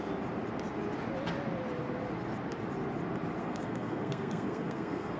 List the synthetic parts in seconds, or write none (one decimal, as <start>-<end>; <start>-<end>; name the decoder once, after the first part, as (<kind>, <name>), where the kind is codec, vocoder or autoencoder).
3.4-5.2 (codec, SNAC)